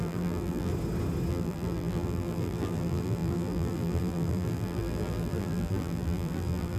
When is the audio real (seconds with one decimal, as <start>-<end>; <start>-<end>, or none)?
0.7-1.3